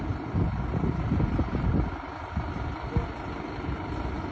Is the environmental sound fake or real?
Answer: real